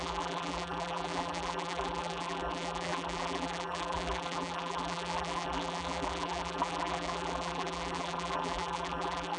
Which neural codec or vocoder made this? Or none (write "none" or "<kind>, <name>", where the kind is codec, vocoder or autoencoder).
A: vocoder, BigVGAN v2